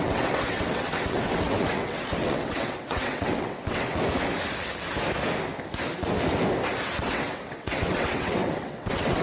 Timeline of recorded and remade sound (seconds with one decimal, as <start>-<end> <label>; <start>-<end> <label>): 0.0-3.9 remade; 3.9-7.0 recorded; 7.0-9.2 remade